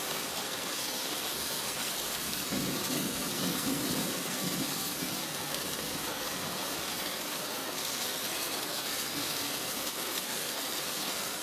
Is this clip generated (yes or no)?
yes